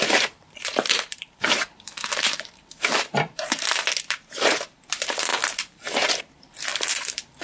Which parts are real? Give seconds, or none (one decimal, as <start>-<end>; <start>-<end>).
none